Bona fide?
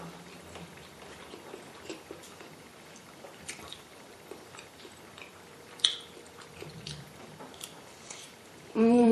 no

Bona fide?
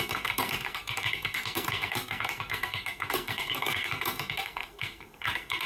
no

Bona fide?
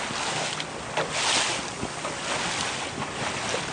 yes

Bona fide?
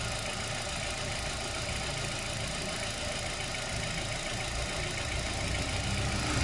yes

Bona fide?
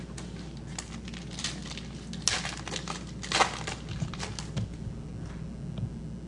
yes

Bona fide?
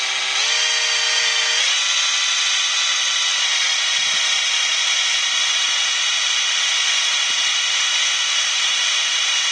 yes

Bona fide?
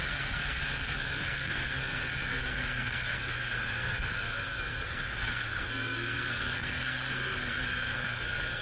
no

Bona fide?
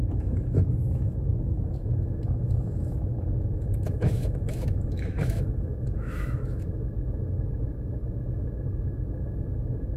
no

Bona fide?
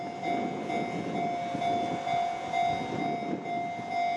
yes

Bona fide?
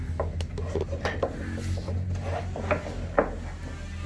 yes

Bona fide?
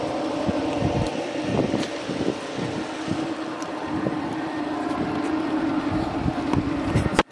no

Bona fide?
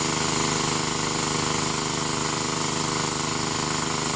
yes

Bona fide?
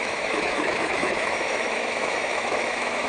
no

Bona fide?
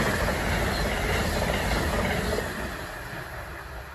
yes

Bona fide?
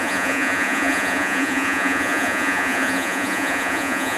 no